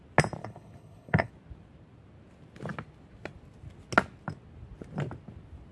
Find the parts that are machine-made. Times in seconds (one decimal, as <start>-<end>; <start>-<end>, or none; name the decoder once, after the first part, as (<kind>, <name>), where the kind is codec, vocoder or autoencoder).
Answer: 0.4-1.3 (codec, HILCodec)